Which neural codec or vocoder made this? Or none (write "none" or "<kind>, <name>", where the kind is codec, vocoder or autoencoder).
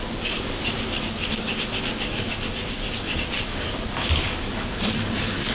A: codec, DAC